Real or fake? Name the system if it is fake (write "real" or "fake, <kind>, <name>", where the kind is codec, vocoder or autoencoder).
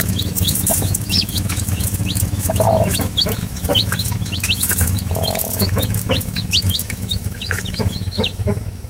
fake, autoencoder, DAC-VAE